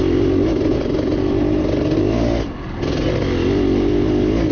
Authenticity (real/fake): real